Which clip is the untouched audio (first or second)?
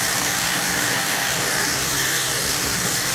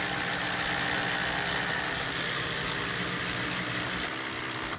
second